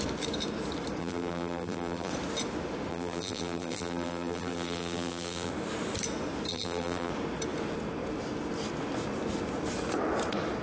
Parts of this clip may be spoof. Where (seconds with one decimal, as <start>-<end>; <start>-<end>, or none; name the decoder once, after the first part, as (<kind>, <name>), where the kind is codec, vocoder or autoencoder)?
1.0-2.1 (vocoder, BigVGAN v2); 2.9-5.5; 6.5-7.1